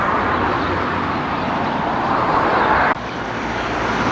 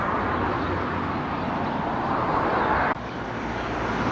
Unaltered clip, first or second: second